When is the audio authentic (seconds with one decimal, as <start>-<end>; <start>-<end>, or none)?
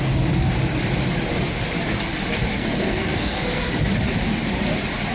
0.0-2.5; 3.7-5.1